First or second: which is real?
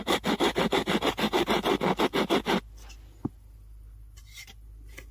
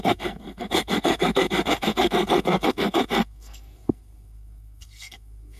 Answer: first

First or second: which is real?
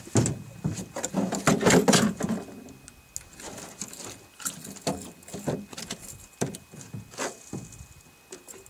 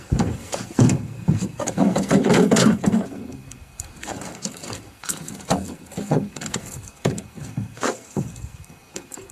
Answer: first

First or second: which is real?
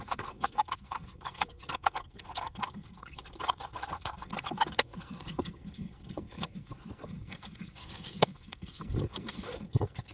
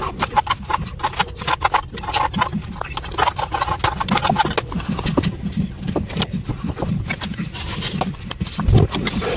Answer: second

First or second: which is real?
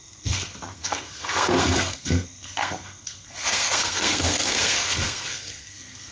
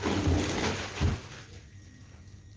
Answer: second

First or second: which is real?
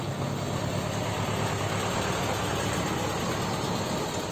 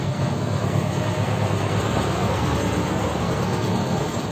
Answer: first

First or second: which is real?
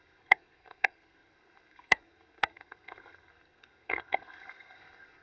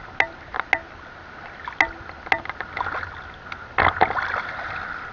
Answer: second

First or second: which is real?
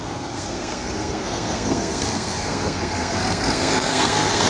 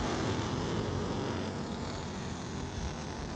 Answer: second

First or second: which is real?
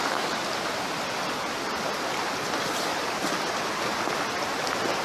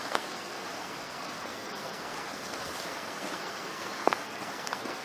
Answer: first